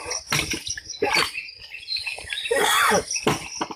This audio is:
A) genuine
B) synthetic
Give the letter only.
A